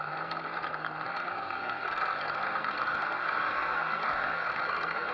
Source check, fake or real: fake